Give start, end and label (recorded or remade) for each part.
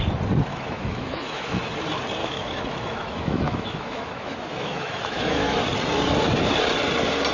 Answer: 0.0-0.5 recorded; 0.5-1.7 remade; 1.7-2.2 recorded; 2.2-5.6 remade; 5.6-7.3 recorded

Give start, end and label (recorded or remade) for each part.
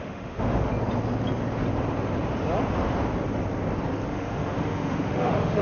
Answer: 0.0-0.7 remade; 0.7-4.1 recorded; 4.1-5.6 remade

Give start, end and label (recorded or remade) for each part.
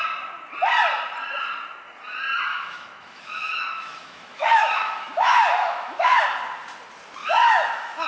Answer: 0.0-2.5 recorded; 2.5-6.2 remade; 6.2-7.2 recorded; 7.2-8.1 remade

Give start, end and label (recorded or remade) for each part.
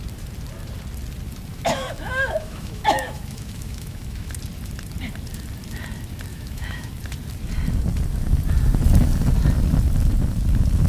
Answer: 0.0-1.5 recorded; 1.5-4.3 remade; 4.3-6.3 recorded; 6.3-6.9 remade; 6.9-10.9 recorded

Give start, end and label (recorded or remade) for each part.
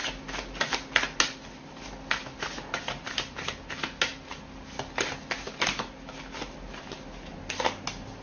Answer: 0.0-8.2 recorded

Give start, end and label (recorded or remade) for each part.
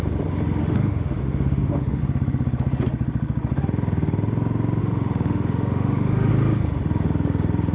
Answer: 0.0-0.6 recorded; 0.6-2.0 remade; 2.0-4.8 recorded; 4.8-6.3 remade; 6.3-7.7 recorded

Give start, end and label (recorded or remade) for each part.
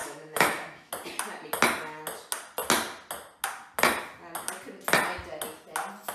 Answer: 0.0-0.9 remade; 0.9-6.1 recorded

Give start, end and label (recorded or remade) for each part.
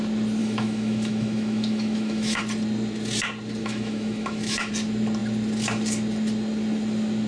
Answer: 0.0-0.4 recorded; 0.4-2.4 remade; 2.4-3.6 recorded; 3.6-4.7 remade; 4.7-7.3 recorded